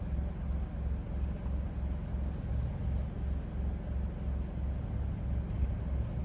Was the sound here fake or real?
real